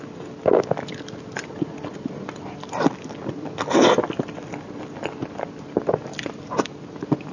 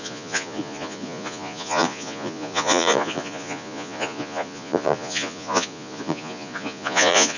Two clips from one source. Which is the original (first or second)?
first